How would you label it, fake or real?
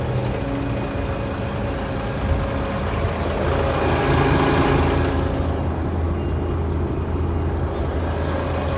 real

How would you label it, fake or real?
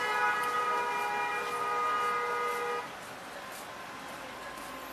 real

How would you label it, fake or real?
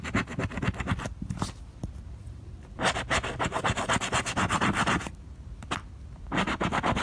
real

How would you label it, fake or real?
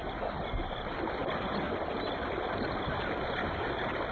real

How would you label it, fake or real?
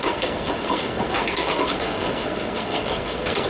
fake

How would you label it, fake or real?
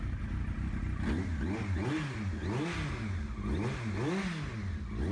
real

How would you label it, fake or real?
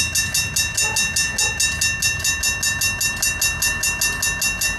real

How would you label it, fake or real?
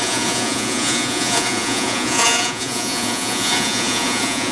fake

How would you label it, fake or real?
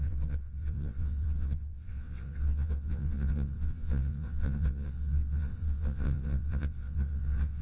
fake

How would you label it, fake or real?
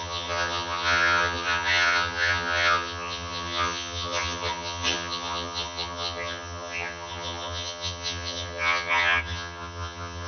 fake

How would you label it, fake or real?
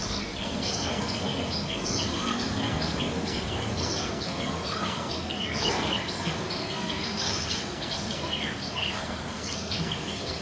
fake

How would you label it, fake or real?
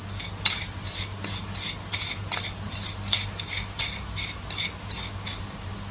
real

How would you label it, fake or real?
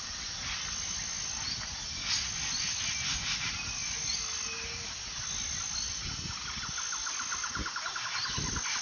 real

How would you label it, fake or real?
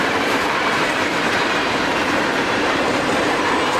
fake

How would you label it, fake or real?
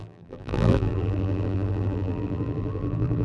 fake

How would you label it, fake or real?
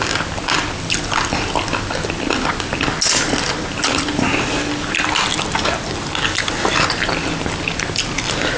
real